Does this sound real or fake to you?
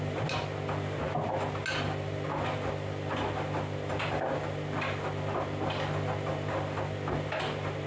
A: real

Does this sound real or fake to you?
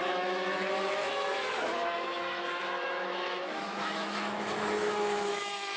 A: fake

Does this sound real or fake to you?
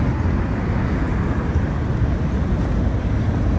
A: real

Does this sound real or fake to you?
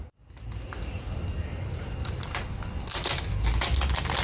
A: real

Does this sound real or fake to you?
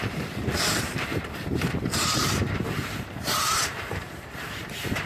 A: fake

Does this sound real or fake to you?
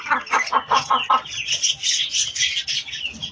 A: real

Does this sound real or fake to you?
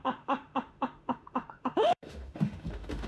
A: fake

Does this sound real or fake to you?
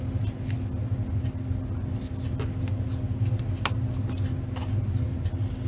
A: real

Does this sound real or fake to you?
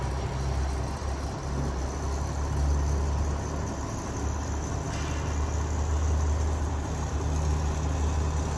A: real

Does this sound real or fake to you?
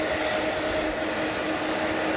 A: real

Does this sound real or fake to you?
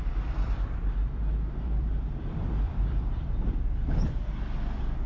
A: fake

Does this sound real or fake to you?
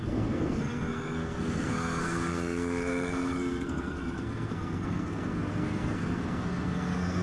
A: fake